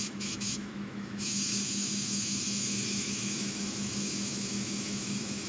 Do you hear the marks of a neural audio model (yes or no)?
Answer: yes